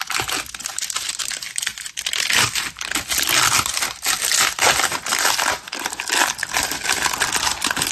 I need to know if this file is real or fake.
real